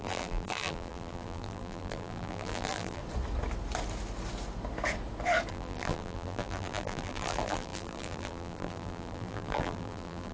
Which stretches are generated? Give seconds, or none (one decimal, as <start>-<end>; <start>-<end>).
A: 0.0-3.0; 5.5-10.3